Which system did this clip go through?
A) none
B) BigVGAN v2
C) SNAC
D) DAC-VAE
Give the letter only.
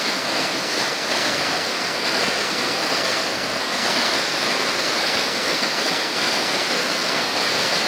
C